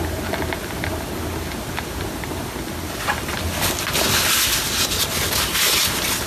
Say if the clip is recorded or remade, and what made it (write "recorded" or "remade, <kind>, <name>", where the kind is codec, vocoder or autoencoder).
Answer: recorded